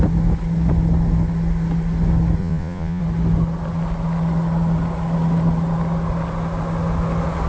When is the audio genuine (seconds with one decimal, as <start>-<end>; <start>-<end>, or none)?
0.0-2.4; 3.0-7.5